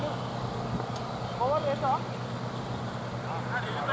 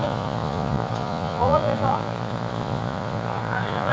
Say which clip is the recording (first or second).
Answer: first